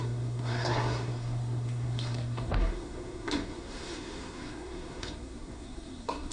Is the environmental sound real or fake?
fake